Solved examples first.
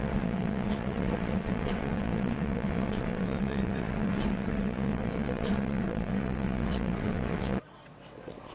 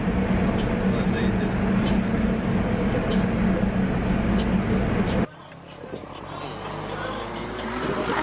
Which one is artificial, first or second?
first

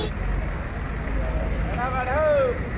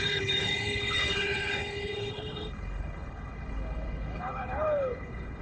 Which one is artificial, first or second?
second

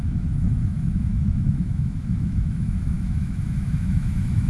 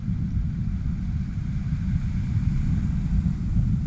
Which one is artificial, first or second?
first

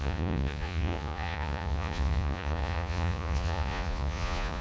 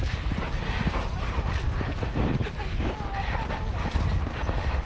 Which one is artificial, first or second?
first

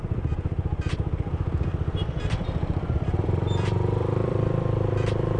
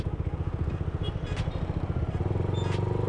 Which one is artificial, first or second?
first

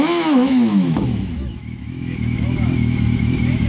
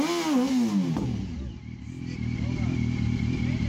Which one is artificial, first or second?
first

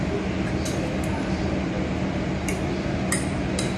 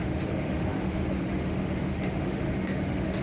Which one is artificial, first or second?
second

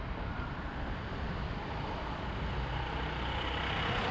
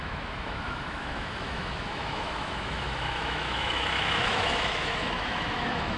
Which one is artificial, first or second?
second